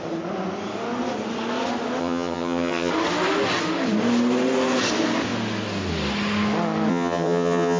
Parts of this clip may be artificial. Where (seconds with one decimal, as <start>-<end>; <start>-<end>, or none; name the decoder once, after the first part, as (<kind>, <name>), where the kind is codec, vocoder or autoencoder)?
2.0-2.9 (vocoder, HiFi-GAN); 6.9-7.8